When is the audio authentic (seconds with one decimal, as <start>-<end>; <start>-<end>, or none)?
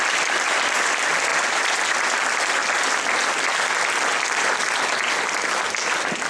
0.0-6.3